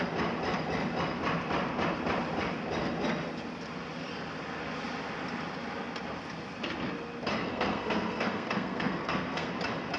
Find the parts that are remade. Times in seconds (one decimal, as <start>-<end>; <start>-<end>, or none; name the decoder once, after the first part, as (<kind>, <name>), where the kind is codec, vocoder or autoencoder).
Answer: 7.4-9.5 (codec, SNAC)